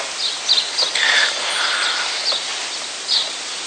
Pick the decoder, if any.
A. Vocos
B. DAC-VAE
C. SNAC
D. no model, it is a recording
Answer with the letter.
D